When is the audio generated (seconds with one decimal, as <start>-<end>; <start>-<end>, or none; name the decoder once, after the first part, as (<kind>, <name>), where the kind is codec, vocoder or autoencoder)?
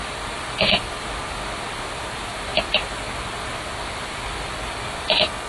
none